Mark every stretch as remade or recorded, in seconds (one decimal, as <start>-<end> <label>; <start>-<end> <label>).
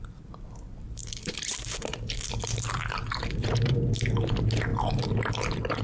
0.0-3.5 remade; 3.5-5.8 recorded